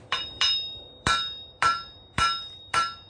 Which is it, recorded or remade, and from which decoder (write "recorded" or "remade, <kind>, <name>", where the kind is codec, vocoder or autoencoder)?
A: remade, vocoder, BigVGAN v2